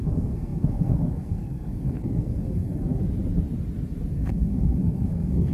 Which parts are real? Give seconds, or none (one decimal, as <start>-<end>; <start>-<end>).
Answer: 3.0-4.1